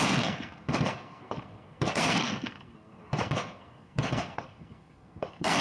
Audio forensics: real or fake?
fake